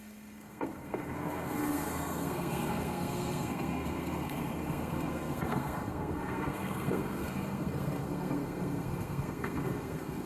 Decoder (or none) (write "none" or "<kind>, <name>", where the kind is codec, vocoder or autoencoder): codec, SNAC